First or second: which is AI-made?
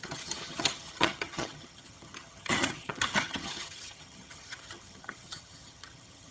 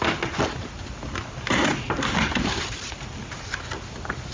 first